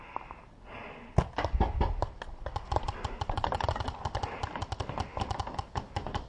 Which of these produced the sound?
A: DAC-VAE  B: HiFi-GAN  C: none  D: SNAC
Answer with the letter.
C